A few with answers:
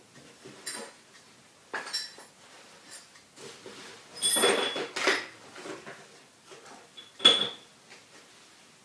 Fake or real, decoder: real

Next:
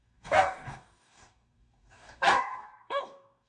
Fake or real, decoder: fake, codec, DAC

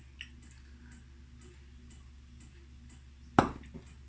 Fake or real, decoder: real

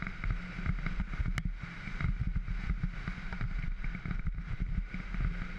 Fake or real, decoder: real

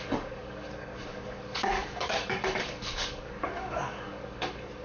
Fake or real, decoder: fake, codec, DAC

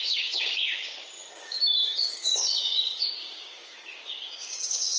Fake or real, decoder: fake, codec, DAC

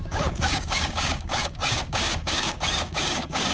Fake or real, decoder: fake, codec, DAC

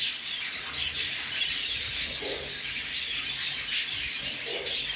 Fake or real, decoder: real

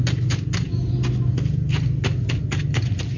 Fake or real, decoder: real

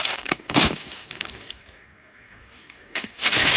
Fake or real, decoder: fake, codec, DAC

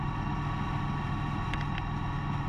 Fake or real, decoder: real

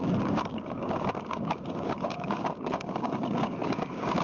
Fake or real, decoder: fake, codec, DAC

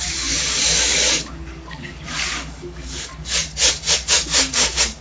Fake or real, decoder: fake, codec, DAC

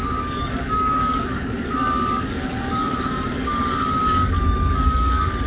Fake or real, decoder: fake, codec, DAC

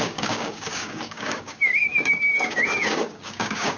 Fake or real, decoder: fake, codec, DAC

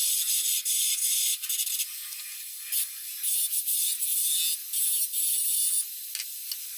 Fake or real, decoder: real